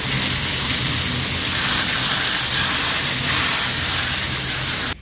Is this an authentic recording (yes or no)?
yes